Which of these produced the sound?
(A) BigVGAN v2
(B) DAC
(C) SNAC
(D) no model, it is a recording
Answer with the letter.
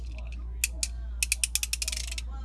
D